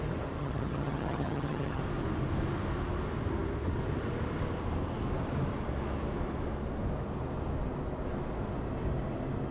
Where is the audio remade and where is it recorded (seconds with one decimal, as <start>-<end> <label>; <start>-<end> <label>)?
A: 0.0-0.4 recorded; 0.4-1.8 remade; 1.8-9.5 recorded